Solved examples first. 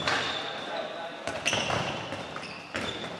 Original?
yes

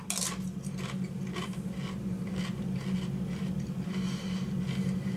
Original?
yes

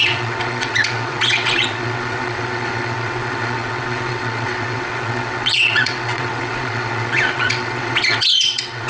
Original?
no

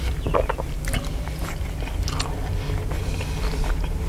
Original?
yes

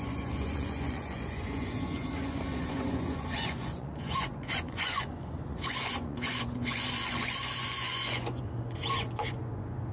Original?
no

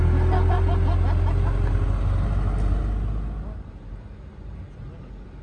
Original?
yes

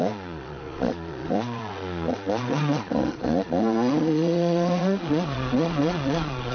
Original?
no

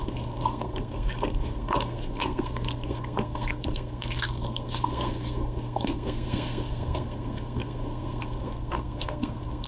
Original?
no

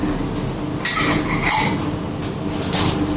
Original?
yes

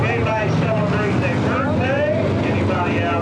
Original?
yes